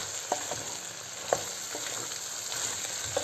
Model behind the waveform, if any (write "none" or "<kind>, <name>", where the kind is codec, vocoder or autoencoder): none